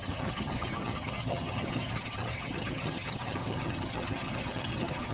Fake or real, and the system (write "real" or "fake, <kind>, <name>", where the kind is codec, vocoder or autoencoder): fake, vocoder, HiFi-GAN